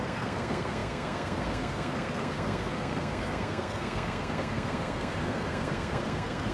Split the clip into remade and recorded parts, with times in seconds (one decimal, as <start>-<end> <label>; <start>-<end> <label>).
0.0-6.5 remade